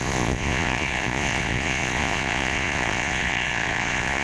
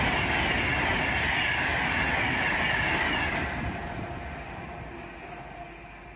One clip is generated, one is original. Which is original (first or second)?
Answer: second